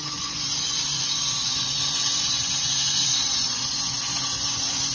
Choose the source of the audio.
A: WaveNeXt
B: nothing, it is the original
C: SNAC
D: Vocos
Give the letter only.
D